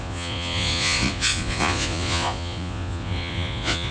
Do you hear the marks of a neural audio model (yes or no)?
yes